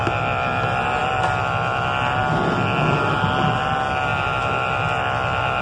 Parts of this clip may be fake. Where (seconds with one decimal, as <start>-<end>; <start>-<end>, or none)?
none